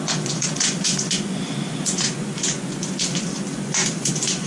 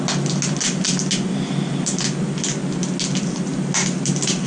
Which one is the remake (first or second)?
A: first